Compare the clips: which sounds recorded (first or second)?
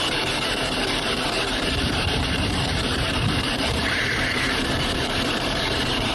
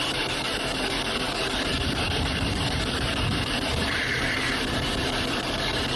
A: second